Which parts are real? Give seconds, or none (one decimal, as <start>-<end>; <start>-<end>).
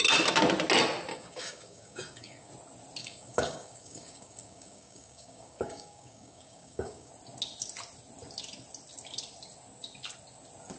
0.0-1.1; 2.5-3.0; 7.1-10.8